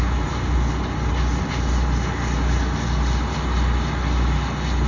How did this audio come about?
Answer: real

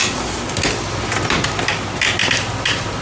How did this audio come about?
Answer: real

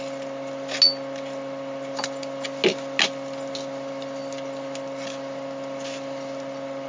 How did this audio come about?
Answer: real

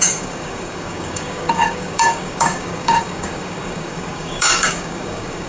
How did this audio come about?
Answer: fake